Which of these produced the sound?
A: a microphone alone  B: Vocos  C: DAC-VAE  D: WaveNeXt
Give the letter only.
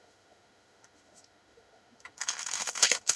C